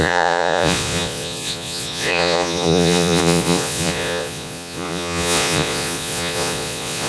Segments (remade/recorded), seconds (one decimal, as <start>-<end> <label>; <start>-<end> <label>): 0.0-7.1 remade